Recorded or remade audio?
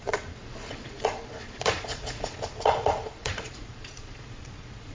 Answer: remade